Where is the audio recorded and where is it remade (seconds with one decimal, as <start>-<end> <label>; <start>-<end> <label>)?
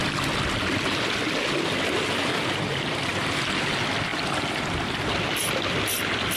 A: 0.0-2.3 recorded; 2.3-3.5 remade; 3.5-4.1 recorded; 4.1-4.6 remade; 4.6-6.4 recorded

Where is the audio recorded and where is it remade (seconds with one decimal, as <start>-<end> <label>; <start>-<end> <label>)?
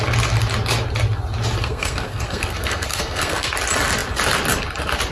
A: 0.0-1.6 recorded; 1.6-3.5 remade; 3.5-5.1 recorded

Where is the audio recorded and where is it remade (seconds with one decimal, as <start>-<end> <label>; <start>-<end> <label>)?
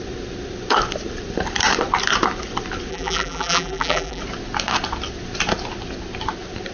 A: 0.0-2.9 recorded; 2.9-4.2 remade; 4.2-6.7 recorded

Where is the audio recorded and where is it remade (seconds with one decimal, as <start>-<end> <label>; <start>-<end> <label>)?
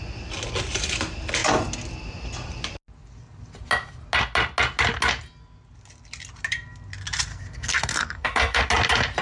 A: 0.0-7.3 recorded; 7.3-8.6 remade; 8.6-9.2 recorded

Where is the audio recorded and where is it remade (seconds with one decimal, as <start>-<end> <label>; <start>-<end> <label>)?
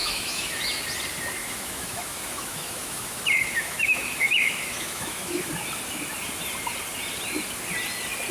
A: 0.0-0.8 remade; 0.8-1.4 recorded; 1.4-5.5 remade; 5.5-8.3 recorded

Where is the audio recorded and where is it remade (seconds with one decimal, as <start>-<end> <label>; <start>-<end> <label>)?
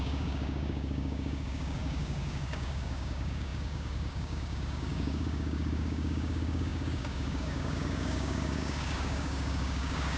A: 0.0-10.2 remade